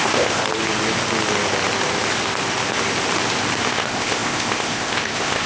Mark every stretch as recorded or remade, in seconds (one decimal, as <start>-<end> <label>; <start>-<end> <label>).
0.0-0.4 remade; 0.4-3.7 recorded; 3.7-5.5 remade